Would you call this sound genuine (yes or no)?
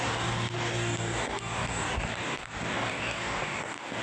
no